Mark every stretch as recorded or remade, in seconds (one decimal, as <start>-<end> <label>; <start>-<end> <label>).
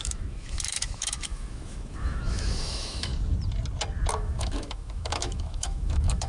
0.0-3.1 remade; 3.1-4.1 recorded; 4.1-6.3 remade